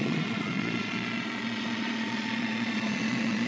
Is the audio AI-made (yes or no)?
yes